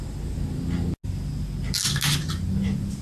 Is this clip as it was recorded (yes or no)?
yes